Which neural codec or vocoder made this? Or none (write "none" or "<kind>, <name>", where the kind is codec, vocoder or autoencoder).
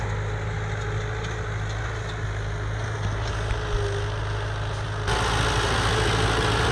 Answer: none